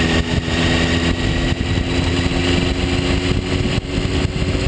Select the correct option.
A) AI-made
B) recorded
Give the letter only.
B